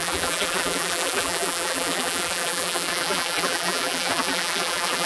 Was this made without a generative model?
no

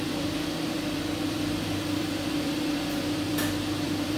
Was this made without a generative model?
no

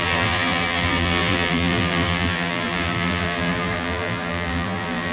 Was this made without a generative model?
no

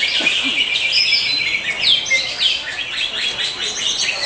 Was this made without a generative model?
yes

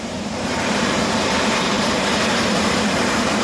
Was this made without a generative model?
no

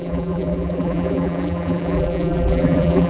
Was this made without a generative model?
no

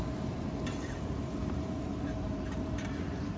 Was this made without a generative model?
no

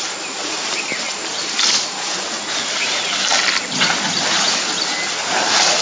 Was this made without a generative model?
yes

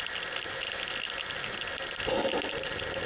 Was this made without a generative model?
yes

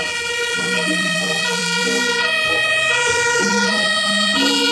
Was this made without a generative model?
no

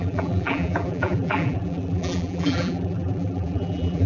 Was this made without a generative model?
no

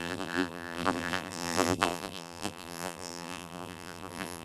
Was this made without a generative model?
no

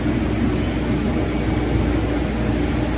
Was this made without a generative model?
yes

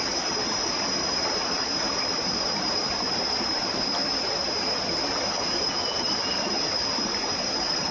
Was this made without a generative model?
no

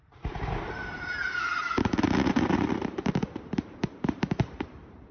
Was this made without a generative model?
no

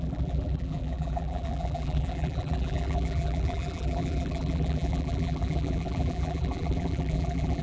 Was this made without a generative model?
no